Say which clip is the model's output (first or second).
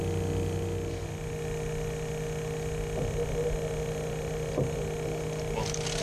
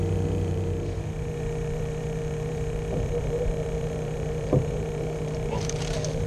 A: second